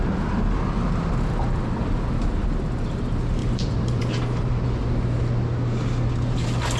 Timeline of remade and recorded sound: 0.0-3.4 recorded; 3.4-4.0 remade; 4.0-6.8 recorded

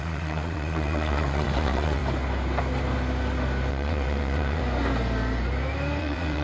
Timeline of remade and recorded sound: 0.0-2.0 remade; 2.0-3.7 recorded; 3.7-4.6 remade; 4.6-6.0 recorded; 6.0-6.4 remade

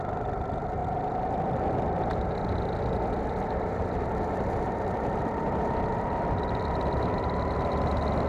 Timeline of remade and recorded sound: 0.0-8.3 remade